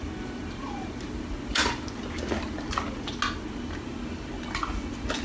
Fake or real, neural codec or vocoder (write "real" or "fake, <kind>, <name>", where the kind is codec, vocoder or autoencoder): real